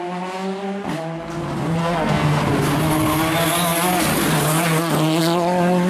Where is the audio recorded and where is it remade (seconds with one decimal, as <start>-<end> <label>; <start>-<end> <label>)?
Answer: 0.0-1.8 recorded; 1.8-2.4 remade; 2.4-5.9 recorded